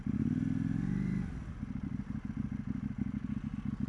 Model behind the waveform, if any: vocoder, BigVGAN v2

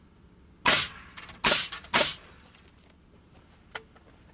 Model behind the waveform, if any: none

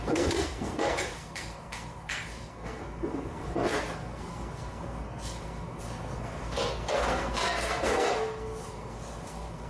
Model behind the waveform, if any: codec, SNAC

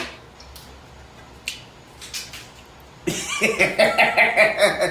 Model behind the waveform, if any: none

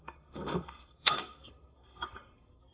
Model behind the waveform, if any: codec, SNAC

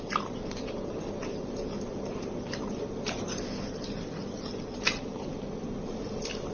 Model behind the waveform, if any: none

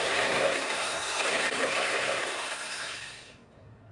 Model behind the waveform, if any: codec, SNAC